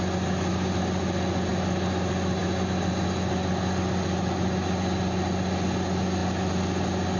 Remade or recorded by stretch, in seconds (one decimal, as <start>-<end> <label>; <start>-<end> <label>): 0.0-7.2 recorded

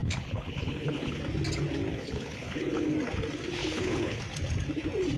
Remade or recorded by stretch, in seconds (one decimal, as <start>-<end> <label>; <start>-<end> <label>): 0.0-1.2 remade; 1.2-1.9 recorded; 1.9-2.9 remade; 2.9-3.6 recorded; 3.6-4.2 remade; 4.2-5.2 recorded

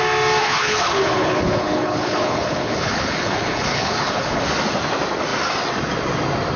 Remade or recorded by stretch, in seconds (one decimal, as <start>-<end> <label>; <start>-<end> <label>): 0.0-0.4 recorded; 0.4-4.4 remade; 4.4-6.6 recorded

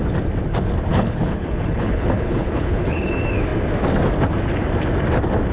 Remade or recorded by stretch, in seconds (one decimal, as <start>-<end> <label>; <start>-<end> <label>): 0.0-0.9 recorded; 0.9-3.1 remade; 3.1-5.5 recorded

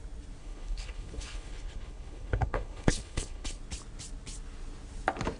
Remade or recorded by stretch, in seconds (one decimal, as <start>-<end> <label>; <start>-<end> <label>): 0.0-0.4 recorded; 0.4-3.6 remade; 3.6-5.4 recorded